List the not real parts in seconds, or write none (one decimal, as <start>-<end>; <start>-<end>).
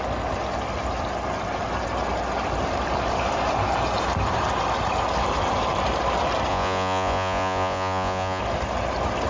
6.5-8.4